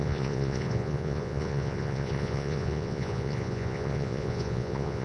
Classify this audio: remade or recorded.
remade